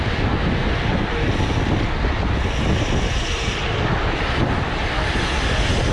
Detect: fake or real real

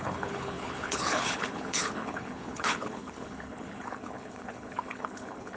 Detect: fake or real fake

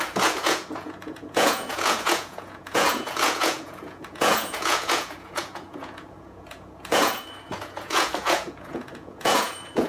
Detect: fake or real fake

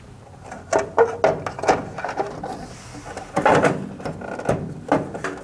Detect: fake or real real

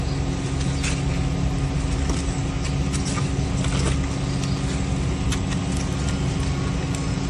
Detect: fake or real real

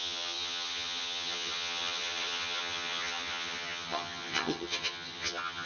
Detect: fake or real fake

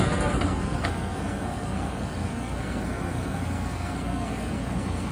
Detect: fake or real fake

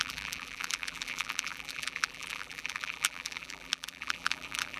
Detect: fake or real fake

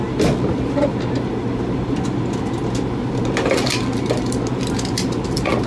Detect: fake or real real